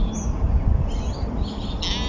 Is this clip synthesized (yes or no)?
no